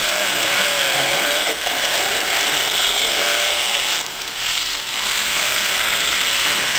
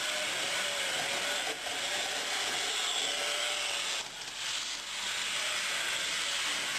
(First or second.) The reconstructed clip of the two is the first